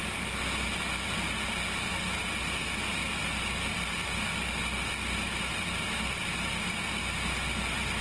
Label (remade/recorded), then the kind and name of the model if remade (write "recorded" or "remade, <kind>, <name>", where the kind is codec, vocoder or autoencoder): recorded